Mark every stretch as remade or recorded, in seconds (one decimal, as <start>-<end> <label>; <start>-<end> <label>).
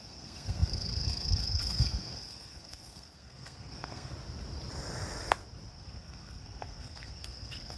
0.0-4.1 remade; 4.1-5.7 recorded; 5.7-7.8 remade